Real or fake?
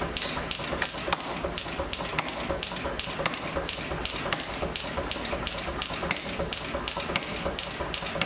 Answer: real